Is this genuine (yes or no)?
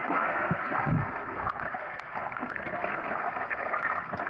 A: no